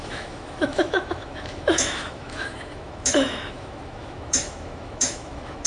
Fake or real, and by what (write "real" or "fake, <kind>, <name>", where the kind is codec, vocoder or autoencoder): fake, autoencoder, DAC-VAE